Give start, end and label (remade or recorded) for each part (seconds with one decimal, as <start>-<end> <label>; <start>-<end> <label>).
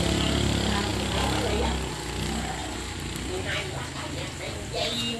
0.0-2.6 recorded; 2.6-3.3 remade; 3.3-5.2 recorded